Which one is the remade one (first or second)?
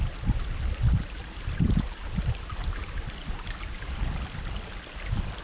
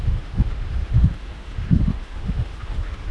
second